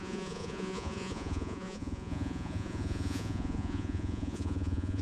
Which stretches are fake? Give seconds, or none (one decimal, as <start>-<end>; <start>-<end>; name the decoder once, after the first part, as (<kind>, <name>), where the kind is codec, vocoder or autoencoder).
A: 0.0-5.0 (vocoder, Vocos)